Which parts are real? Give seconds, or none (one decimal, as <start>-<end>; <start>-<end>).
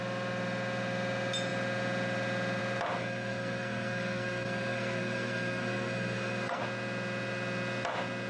0.0-3.0; 6.6-8.3